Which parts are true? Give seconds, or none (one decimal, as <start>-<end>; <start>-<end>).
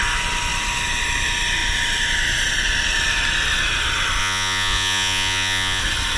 0.0-4.2; 5.8-6.2